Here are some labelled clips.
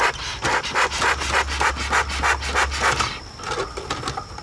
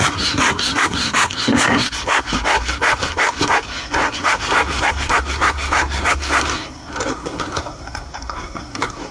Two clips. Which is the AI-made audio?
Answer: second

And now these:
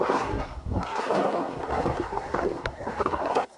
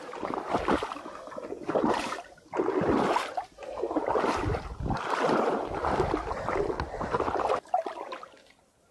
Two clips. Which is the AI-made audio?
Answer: first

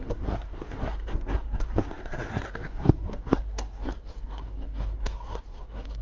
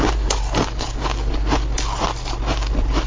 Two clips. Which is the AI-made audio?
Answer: first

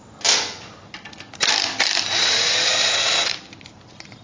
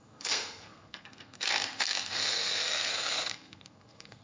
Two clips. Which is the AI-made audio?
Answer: second